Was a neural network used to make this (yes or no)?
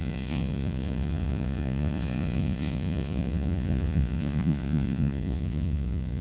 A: yes